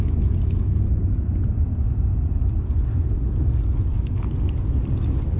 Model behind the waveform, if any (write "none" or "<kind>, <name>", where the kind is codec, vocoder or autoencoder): none